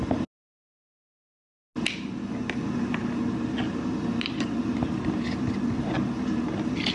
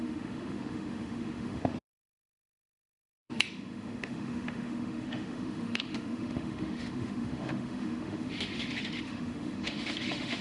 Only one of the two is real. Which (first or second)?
first